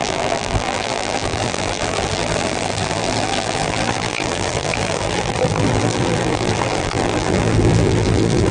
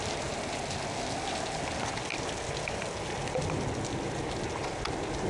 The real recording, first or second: second